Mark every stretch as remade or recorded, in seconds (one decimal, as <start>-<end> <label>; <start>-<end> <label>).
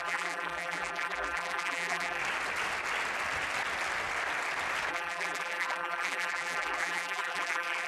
0.0-2.2 remade; 2.2-4.9 recorded; 4.9-7.9 remade